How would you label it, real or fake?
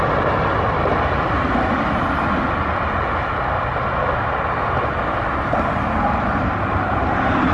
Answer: real